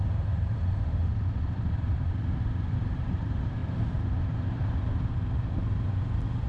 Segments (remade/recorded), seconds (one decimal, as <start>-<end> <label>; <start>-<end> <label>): 0.0-1.0 remade; 1.0-1.7 recorded; 1.7-6.5 remade